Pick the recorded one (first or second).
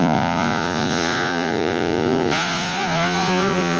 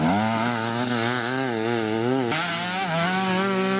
second